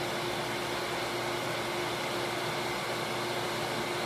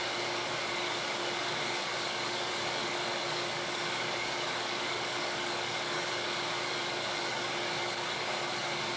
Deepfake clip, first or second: second